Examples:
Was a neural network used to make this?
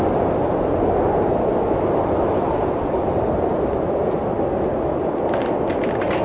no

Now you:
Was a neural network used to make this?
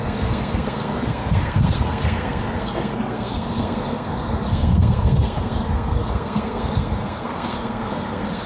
yes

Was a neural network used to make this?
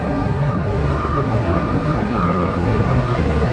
yes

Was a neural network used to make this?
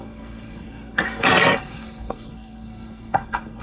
yes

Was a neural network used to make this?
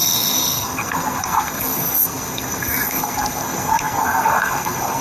yes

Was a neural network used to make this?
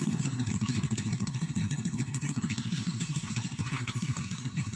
yes